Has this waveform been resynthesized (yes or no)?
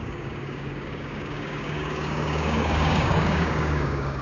yes